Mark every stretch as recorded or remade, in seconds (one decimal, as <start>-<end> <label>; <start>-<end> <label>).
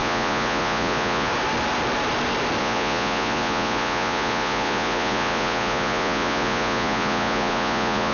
0.0-1.3 remade; 1.3-2.6 recorded; 2.6-8.1 remade